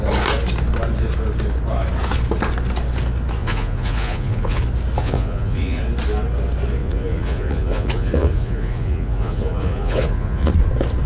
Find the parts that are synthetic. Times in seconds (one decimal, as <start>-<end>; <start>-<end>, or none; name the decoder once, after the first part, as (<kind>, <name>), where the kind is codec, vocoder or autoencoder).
3.4-4.6 (vocoder, Vocos); 5.0-5.8; 6.8-10.5